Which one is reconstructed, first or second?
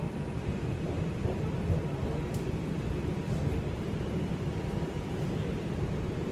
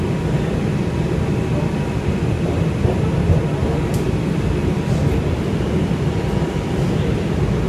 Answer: first